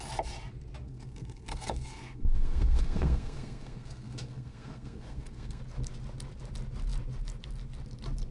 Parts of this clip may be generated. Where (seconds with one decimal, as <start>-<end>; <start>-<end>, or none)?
0.8-5.6